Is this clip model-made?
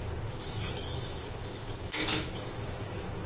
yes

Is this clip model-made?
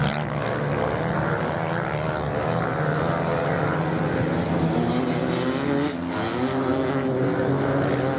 no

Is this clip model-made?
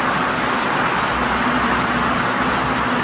no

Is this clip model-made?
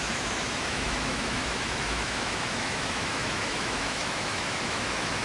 yes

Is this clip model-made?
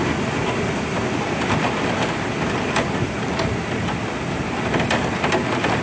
no